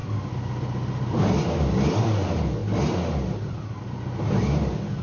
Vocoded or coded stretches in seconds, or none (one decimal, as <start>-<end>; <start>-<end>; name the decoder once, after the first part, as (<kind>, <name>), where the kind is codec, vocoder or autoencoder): none